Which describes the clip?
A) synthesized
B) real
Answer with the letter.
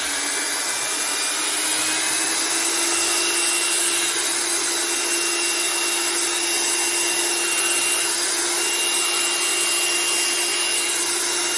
B